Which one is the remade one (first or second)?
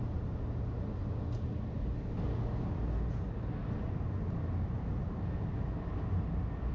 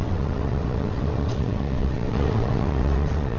second